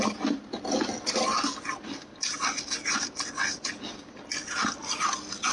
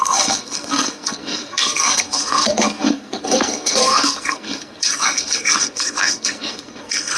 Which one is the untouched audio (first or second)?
first